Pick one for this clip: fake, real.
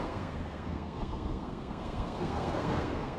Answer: fake